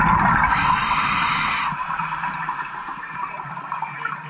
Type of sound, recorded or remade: recorded